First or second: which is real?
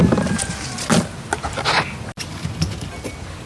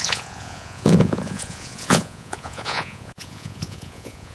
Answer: first